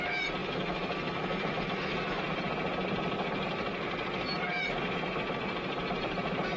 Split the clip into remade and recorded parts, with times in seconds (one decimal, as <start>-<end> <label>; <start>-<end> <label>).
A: 0.0-0.4 recorded; 0.4-2.2 remade; 2.2-6.6 recorded